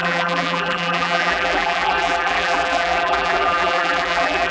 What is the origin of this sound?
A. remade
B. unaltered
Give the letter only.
A